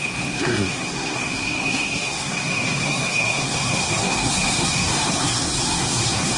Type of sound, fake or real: fake